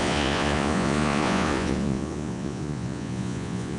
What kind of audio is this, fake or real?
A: fake